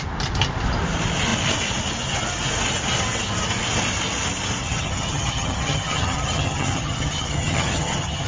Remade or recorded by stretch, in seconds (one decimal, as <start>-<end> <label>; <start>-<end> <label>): 0.0-4.6 recorded; 4.6-8.3 remade